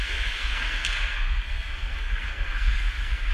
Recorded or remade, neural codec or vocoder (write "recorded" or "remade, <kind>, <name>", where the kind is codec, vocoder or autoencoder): remade, codec, SNAC